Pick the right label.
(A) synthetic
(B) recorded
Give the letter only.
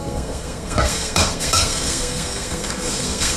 A